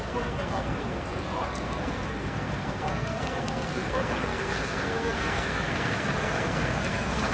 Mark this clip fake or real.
fake